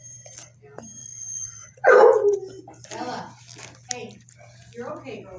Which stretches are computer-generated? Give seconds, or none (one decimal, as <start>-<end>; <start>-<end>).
1.0-1.9